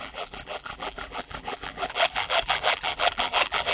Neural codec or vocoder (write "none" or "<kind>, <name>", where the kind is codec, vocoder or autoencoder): vocoder, BigVGAN v2